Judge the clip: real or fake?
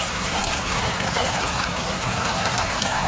fake